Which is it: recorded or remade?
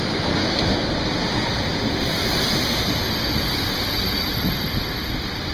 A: recorded